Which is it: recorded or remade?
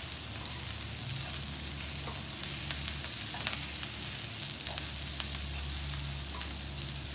recorded